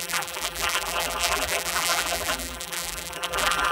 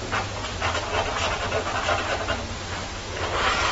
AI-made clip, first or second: first